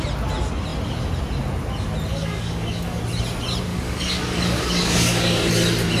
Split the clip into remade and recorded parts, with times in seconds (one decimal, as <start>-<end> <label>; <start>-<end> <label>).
0.0-2.1 recorded; 2.1-3.0 remade; 3.0-3.7 recorded; 3.7-5.5 remade; 5.5-6.0 recorded